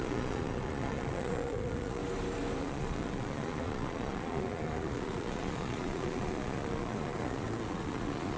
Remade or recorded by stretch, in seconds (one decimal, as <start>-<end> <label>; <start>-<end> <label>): 0.0-2.0 remade; 2.0-2.6 recorded; 2.6-8.4 remade